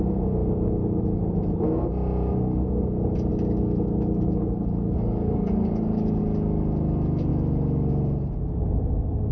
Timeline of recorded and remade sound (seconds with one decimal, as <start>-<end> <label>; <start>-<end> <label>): 0.0-3.3 recorded; 3.3-6.2 remade; 6.2-9.3 recorded